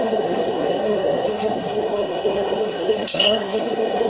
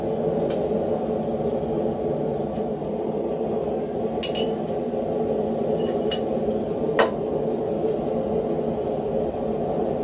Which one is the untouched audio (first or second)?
second